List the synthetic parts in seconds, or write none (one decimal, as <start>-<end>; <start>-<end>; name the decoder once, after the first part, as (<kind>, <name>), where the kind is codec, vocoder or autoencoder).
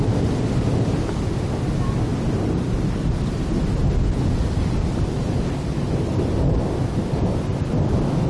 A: none